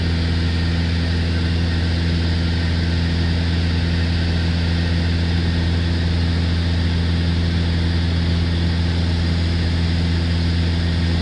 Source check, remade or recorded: recorded